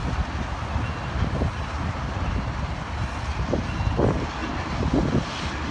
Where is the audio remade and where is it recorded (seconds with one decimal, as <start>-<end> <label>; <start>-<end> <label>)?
0.0-5.7 recorded